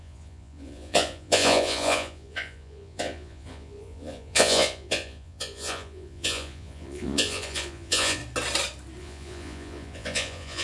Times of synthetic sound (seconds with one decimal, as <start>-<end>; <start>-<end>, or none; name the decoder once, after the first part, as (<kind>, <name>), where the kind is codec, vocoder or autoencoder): 0.0-8.2 (vocoder, Vocos); 9.0-10.6

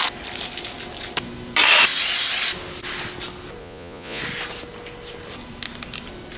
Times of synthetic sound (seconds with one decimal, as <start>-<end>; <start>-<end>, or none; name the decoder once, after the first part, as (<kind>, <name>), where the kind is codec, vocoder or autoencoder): 3.6-4.2 (vocoder, Vocos)